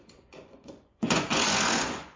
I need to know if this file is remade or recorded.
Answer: remade